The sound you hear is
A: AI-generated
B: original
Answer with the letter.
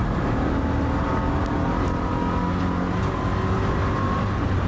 B